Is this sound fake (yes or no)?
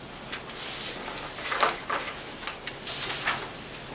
no